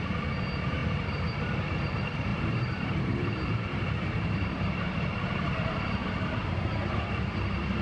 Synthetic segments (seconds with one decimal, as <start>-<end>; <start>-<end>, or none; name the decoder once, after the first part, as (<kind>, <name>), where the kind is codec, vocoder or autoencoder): 2.3-4.9 (vocoder, BigVGAN v2); 6.0-7.1